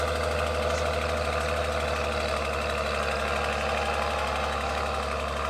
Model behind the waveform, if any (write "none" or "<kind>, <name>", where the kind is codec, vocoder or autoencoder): none